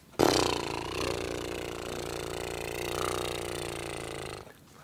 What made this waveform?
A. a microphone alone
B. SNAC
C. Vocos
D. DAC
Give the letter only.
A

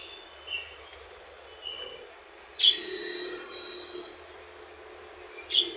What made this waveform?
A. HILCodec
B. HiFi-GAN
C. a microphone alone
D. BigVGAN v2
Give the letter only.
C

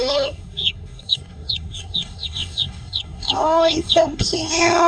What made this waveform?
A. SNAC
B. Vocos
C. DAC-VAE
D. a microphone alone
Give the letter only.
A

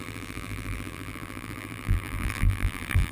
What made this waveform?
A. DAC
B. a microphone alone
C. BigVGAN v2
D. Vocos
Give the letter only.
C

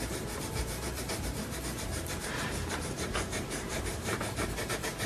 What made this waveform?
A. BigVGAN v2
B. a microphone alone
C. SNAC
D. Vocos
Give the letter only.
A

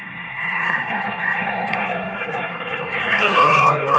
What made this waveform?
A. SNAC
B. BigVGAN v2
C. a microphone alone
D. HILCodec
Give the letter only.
A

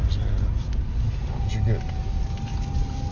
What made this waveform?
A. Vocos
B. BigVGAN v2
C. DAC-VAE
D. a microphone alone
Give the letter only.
D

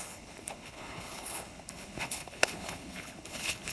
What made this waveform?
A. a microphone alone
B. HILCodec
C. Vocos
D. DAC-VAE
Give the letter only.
B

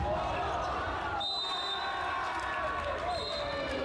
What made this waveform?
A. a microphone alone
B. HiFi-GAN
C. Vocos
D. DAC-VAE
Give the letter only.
A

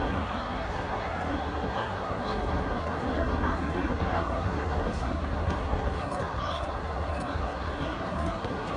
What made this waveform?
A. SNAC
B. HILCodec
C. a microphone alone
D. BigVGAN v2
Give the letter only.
A